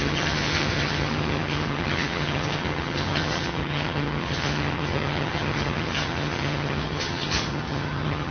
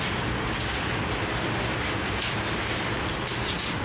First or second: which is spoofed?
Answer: first